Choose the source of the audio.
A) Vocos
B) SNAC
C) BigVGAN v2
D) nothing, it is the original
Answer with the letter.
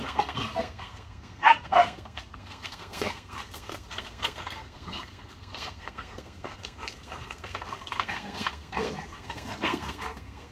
B